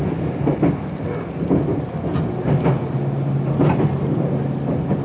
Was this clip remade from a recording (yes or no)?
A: no